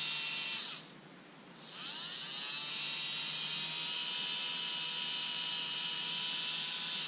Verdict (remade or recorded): recorded